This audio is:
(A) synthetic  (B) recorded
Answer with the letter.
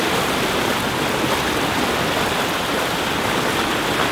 B